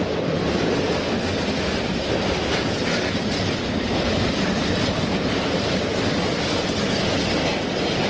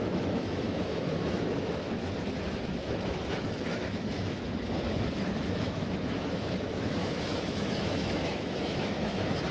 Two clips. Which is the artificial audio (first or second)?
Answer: second